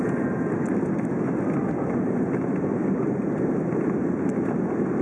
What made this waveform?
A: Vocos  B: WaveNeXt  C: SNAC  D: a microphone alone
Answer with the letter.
D